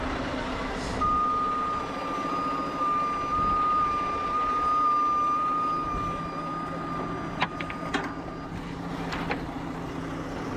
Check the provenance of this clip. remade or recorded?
recorded